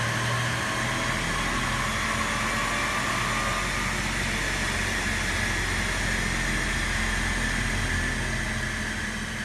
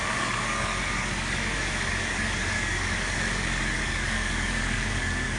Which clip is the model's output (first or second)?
second